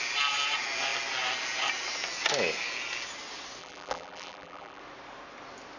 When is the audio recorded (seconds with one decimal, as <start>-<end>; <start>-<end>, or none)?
0.0-3.6; 4.8-5.8